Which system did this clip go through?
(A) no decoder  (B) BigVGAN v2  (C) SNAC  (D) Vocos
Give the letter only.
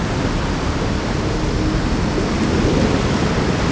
A